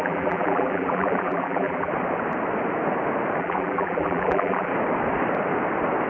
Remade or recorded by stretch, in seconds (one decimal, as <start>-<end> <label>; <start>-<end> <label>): 0.0-1.9 remade; 1.9-3.4 recorded; 3.4-4.7 remade; 4.7-6.1 recorded